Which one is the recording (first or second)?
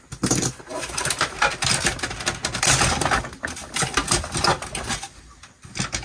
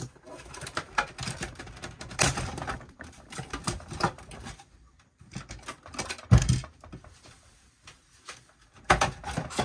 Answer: first